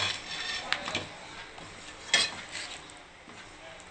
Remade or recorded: recorded